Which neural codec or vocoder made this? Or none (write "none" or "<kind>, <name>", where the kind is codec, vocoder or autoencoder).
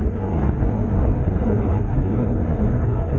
codec, SNAC